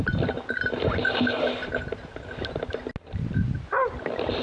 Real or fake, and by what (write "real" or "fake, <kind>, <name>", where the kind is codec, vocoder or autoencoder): real